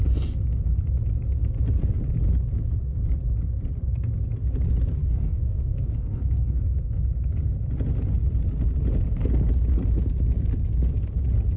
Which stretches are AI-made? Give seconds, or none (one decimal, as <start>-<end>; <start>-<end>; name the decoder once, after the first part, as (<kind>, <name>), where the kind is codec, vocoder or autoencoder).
5.0-7.0 (codec, SNAC)

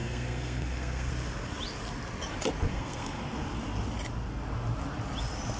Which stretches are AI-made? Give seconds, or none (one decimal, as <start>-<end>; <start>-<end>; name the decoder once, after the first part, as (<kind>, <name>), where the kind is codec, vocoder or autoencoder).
0.0-1.1 (codec, SNAC); 2.7-3.2

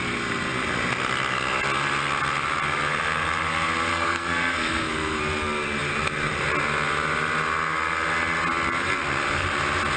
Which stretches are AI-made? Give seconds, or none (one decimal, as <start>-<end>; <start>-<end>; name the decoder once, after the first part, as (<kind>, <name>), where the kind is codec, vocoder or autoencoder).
3.9-5.2 (codec, SNAC)

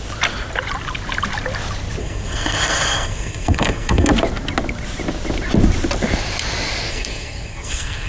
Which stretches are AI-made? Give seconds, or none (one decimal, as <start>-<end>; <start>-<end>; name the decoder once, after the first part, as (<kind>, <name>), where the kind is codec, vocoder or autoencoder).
2.0-4.1 (codec, SNAC); 6.9-8.1

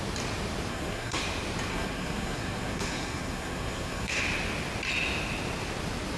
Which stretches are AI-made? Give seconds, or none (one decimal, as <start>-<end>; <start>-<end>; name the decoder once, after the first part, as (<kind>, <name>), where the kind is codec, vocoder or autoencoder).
0.7-1.2 (codec, SNAC); 1.7-4.2

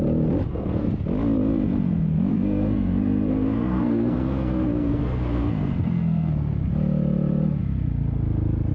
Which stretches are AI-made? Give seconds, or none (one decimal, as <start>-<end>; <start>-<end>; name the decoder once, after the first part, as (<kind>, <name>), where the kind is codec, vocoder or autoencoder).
0.5-1.0 (codec, SNAC); 2.3-6.3

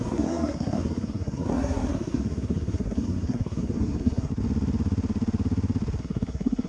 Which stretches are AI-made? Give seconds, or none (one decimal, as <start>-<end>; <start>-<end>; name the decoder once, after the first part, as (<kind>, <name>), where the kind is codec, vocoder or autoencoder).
0.0-4.3 (codec, SNAC); 6.0-6.7

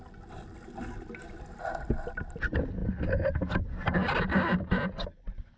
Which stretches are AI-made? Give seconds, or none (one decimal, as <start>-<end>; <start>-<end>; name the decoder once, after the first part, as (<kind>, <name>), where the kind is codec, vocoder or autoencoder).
none